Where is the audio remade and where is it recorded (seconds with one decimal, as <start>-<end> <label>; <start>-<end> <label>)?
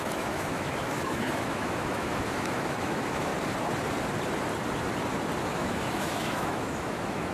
0.0-3.3 remade; 3.3-5.5 recorded; 5.5-7.3 remade